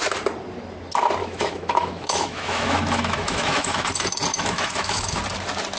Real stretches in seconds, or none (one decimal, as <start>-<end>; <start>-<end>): 0.0-1.2; 3.9-4.3; 5.2-5.8